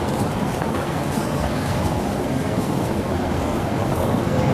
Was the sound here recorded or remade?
remade